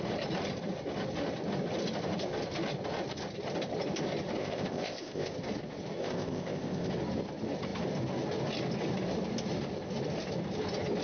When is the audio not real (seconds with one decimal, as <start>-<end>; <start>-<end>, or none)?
4.4-5.3; 6.0-6.9